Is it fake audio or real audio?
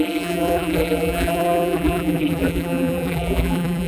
fake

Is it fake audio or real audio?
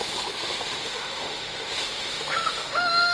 fake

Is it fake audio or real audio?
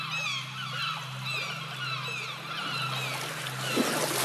real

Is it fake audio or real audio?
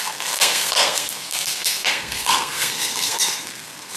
fake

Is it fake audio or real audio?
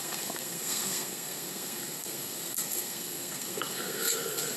fake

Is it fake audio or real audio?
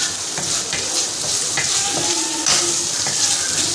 real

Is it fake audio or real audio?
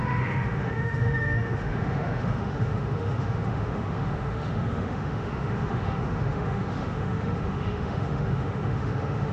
fake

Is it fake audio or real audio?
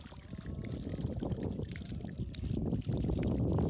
real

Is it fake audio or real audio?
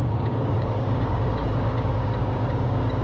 fake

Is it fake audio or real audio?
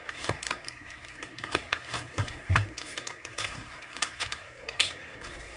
fake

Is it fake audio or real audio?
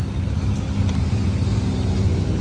real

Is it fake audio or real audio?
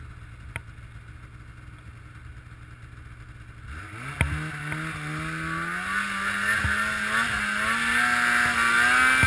real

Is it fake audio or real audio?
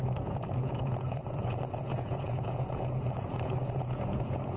fake